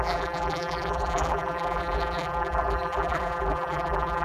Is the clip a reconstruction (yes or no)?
yes